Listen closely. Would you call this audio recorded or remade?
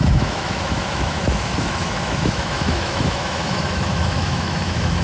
remade